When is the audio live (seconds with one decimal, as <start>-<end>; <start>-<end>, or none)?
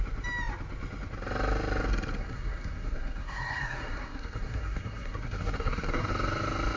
0.0-2.2; 6.1-6.8